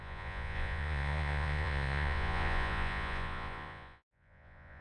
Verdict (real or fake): fake